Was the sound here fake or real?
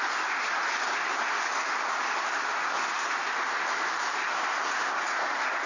real